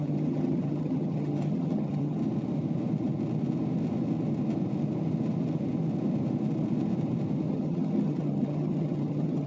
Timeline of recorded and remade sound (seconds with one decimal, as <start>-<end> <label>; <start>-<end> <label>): 0.0-2.2 remade; 2.2-7.5 recorded; 7.5-9.5 remade